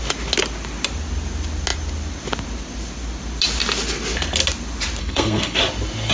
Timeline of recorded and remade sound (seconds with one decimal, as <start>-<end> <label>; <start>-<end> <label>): 0.0-5.0 recorded; 5.0-5.6 remade; 5.6-6.1 recorded